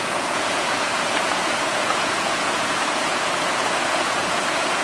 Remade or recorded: remade